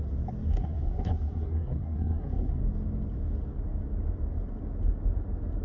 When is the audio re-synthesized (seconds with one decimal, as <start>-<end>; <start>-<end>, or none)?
0.5-2.6